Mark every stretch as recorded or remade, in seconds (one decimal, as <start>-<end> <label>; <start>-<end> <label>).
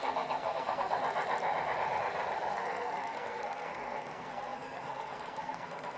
0.0-1.0 remade; 1.0-2.5 recorded; 2.5-6.0 remade